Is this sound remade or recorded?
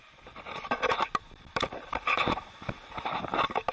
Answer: remade